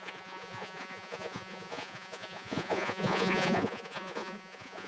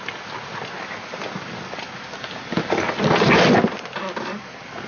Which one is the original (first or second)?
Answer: second